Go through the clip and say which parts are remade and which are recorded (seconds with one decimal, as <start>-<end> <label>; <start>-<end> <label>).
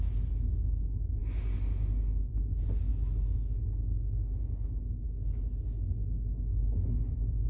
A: 0.0-7.5 recorded